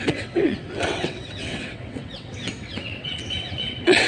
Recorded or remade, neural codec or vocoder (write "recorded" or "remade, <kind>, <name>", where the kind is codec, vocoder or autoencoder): remade, vocoder, WaveNeXt